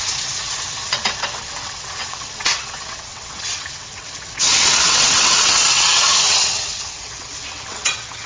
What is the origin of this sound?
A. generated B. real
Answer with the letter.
A